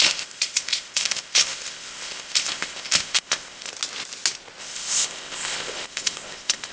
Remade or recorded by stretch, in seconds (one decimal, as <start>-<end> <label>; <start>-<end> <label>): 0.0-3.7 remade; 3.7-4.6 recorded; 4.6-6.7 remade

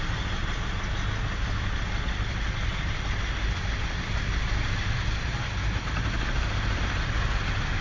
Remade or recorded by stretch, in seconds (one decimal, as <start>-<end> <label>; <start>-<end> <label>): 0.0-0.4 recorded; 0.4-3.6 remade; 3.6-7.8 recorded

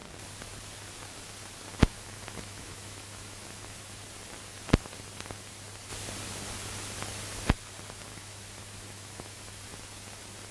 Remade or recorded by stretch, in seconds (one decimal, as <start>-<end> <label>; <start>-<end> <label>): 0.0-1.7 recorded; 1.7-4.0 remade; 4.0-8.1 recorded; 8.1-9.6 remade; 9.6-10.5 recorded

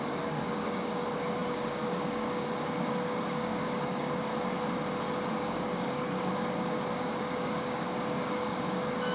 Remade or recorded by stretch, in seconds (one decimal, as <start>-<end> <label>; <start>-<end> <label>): 0.0-4.3 remade; 4.3-5.3 recorded; 5.3-9.1 remade

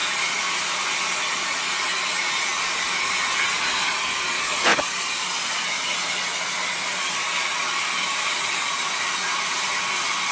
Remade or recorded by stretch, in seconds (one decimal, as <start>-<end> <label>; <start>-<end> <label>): 0.0-0.8 remade; 0.8-2.5 recorded; 2.5-3.1 remade; 3.1-4.7 recorded; 4.7-9.5 remade; 9.5-10.3 recorded

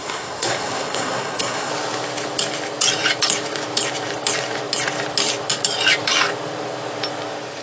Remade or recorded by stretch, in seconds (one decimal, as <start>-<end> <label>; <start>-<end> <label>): 0.0-1.7 remade; 1.7-7.6 recorded